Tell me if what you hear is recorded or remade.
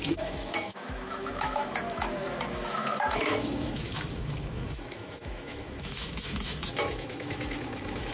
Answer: remade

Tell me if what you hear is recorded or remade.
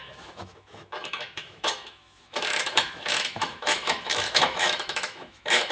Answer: remade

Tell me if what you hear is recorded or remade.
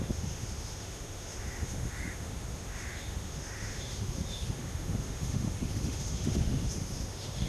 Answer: remade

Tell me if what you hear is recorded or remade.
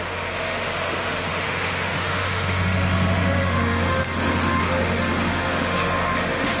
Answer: remade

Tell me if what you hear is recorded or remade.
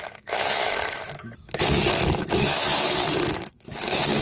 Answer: remade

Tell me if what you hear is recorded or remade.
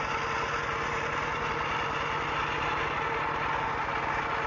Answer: recorded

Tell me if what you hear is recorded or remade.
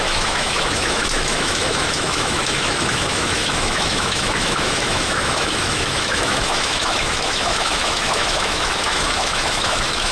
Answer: remade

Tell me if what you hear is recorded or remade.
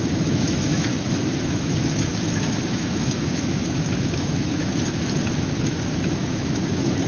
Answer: remade